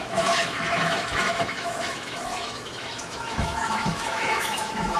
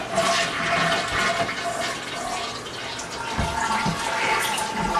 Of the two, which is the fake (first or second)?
first